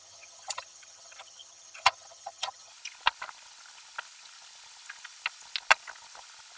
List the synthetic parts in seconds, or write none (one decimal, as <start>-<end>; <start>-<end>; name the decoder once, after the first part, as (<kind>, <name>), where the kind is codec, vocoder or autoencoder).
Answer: 0.0-2.7 (vocoder, HiFi-GAN)